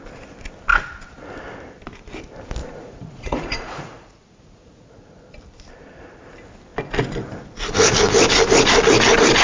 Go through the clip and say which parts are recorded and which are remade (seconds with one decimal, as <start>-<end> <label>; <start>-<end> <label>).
0.0-2.6 recorded; 2.6-5.2 remade; 5.2-9.4 recorded